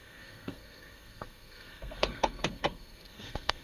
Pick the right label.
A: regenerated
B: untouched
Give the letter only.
A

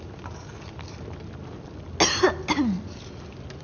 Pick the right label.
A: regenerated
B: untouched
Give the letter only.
B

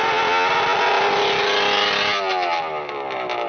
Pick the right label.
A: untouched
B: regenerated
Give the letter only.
A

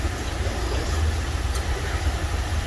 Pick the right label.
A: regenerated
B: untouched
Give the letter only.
B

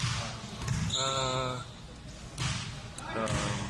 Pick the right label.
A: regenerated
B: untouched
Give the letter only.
B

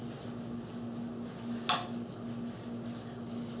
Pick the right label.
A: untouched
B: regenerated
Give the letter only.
A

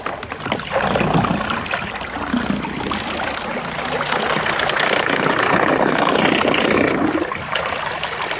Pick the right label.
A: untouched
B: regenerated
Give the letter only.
A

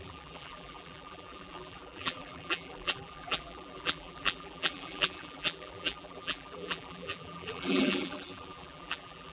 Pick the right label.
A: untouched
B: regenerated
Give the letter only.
B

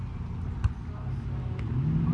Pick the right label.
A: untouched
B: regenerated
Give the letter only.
A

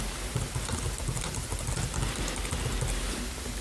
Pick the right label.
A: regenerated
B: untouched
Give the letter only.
B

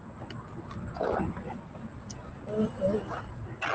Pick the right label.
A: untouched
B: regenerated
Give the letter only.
A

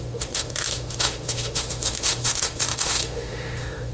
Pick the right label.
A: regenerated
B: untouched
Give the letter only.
A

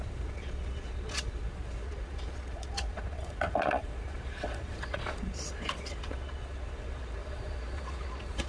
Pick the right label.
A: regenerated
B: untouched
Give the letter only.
A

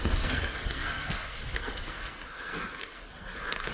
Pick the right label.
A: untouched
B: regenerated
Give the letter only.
B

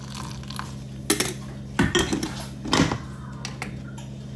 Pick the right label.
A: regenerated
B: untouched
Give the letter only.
B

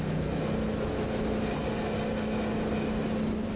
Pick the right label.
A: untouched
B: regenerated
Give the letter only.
A